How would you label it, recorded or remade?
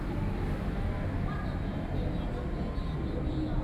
recorded